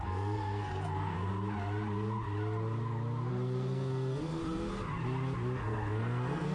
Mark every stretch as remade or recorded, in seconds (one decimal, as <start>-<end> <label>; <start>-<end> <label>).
0.0-1.3 remade; 1.3-3.3 recorded; 3.3-4.4 remade; 4.4-5.6 recorded; 5.6-6.5 remade